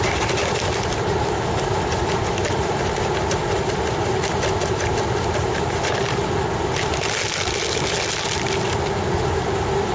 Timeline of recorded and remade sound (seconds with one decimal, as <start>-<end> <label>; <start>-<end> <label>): 0.0-9.9 recorded